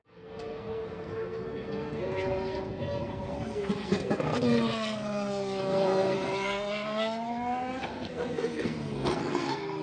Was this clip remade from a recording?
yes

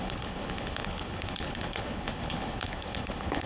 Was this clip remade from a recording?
yes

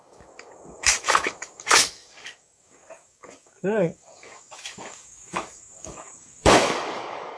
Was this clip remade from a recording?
yes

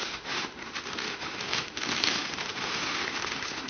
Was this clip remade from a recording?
yes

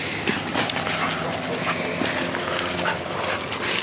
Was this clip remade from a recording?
no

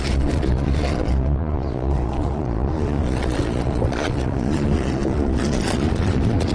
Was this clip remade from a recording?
yes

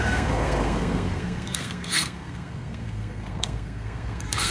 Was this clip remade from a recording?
yes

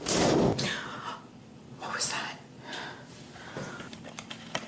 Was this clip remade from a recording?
yes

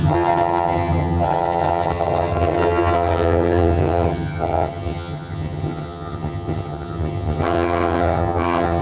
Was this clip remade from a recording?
yes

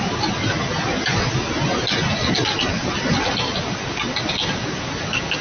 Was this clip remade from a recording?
no